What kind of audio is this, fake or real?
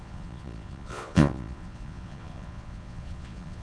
fake